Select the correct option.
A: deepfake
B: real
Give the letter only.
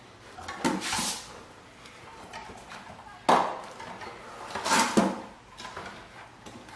B